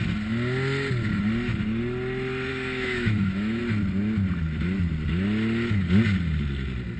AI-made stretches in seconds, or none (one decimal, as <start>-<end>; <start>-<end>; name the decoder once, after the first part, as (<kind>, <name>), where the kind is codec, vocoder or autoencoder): 2.5-3.6 (autoencoder, DAC-VAE)

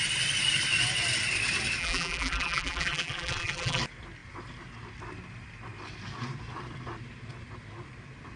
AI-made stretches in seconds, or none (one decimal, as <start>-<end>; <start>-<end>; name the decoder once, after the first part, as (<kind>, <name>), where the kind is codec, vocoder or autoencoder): 1.8-3.8 (vocoder, BigVGAN v2)

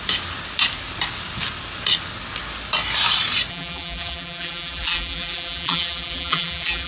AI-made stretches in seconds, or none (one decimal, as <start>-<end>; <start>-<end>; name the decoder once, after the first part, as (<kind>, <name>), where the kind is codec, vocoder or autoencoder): 3.5-6.9 (vocoder, BigVGAN v2)

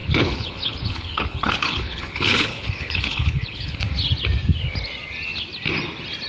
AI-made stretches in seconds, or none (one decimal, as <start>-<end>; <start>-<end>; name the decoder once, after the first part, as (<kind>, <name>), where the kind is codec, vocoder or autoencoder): 0.0-3.8 (codec, HILCodec)

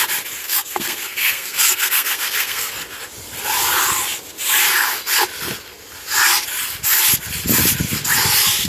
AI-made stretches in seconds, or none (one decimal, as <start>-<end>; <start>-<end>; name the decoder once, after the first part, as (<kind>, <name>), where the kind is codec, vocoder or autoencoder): 0.4-2.7 (codec, SNAC)